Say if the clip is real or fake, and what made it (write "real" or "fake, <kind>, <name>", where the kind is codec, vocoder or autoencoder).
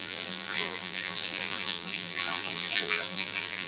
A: fake, vocoder, BigVGAN v2